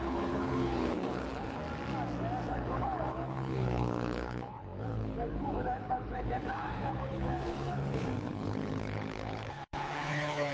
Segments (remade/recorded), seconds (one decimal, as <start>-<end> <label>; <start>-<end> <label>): 0.0-1.6 remade; 1.6-2.5 recorded; 2.5-10.5 remade